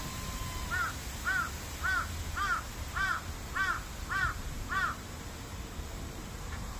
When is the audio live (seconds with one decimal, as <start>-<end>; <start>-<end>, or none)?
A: 0.0-4.0